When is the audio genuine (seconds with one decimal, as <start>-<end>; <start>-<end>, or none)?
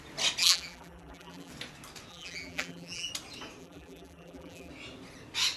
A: 0.0-0.4; 1.5-2.1; 3.1-3.6; 4.7-5.6